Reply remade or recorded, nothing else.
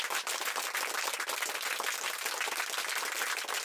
recorded